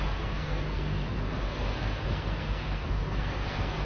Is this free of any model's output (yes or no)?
no